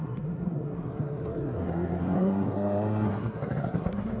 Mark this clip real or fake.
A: fake